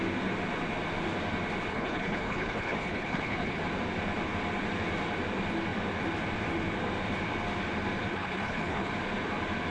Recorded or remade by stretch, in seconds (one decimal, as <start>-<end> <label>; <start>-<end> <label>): 0.0-1.7 recorded; 1.7-3.6 remade; 3.6-8.1 recorded; 8.1-8.9 remade; 8.9-9.7 recorded